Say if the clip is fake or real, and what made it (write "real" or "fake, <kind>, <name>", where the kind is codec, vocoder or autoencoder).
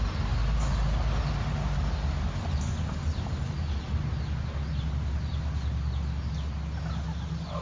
real